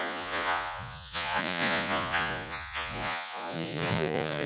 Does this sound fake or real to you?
fake